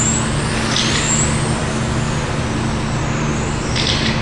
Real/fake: real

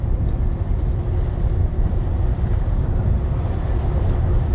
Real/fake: fake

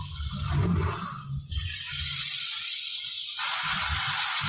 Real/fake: real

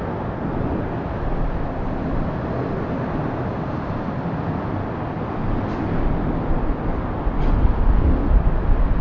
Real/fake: real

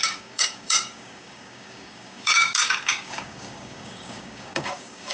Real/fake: fake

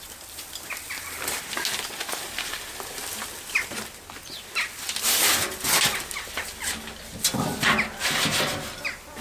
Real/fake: real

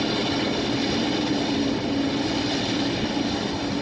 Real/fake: real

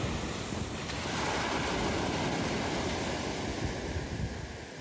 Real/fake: real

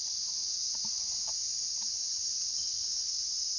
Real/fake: real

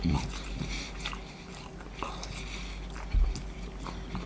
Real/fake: real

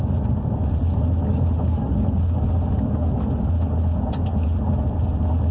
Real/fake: real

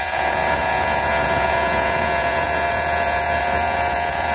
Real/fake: fake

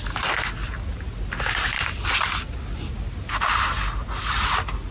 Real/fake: real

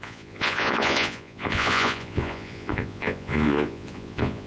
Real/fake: fake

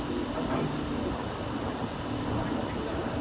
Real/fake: real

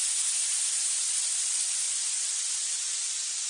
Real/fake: real